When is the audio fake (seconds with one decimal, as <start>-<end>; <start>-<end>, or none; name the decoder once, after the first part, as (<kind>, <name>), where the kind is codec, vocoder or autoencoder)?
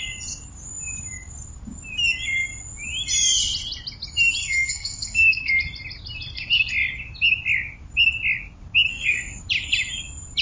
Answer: 4.4-5.5 (codec, SNAC); 8.9-9.4